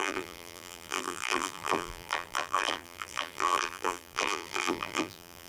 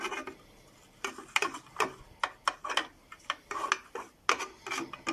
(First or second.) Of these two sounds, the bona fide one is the second